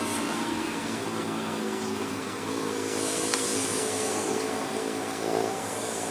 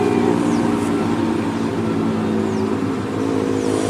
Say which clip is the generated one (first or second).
first